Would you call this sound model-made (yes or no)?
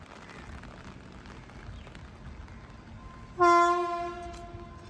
no